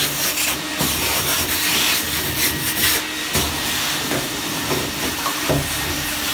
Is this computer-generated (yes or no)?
no